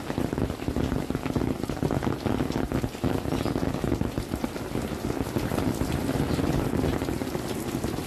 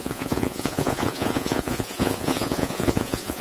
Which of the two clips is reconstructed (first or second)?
second